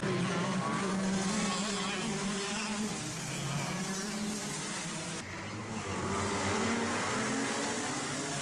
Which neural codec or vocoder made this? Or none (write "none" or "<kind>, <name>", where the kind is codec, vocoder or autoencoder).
none